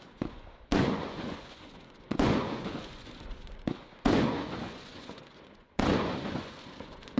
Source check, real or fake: fake